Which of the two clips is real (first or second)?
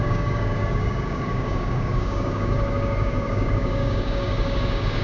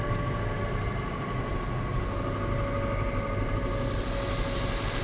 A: second